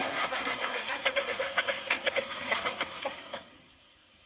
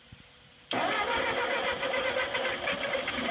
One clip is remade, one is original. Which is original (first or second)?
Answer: second